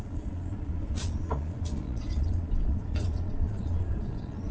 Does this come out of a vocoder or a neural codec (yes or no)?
yes